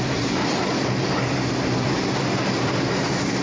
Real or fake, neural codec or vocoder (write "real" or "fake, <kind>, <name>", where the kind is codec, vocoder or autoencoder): real